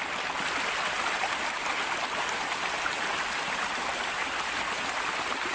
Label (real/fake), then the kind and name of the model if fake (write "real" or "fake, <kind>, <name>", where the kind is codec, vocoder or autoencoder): real